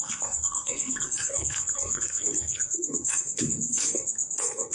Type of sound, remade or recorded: remade